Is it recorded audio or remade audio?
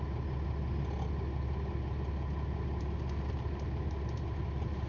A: recorded